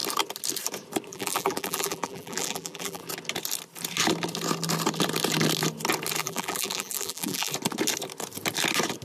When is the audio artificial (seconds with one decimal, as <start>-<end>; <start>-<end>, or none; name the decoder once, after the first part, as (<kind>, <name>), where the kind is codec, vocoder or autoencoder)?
1.1-3.0 (vocoder, BigVGAN v2); 6.2-7.5